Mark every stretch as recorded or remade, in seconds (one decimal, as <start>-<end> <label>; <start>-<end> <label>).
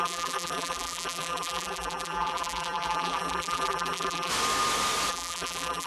0.0-4.3 remade; 4.3-5.1 recorded; 5.1-5.9 remade